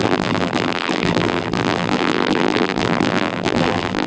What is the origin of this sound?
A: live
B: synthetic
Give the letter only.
B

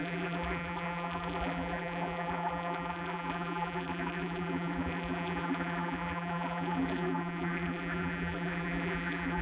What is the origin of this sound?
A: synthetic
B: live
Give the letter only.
A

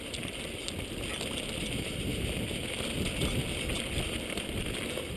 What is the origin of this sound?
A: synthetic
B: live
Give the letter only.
B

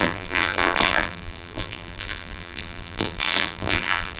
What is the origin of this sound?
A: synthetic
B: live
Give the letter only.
A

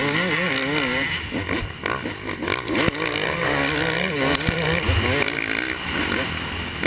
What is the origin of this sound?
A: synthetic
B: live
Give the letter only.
B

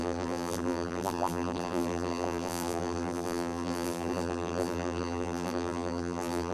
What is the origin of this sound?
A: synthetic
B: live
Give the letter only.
A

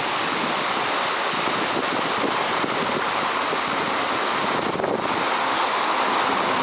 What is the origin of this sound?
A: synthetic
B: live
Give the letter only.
B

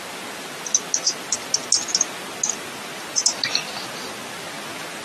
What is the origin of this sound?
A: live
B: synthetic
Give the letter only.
A